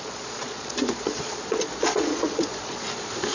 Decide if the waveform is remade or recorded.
remade